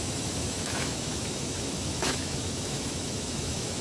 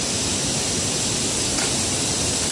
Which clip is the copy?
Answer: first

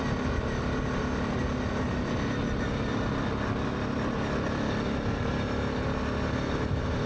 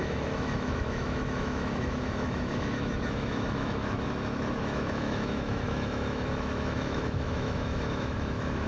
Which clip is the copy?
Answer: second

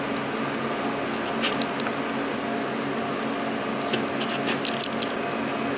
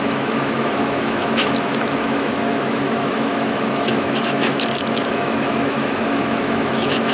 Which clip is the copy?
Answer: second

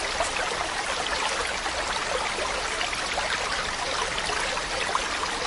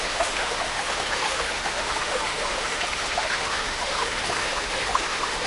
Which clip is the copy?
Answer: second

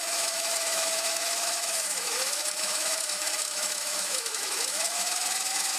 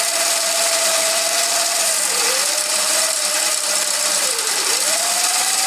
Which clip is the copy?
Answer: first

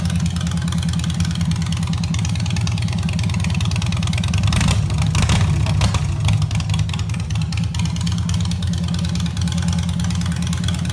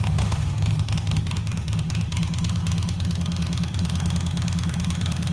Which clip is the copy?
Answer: second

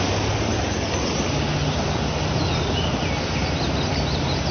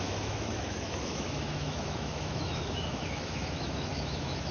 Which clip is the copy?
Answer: second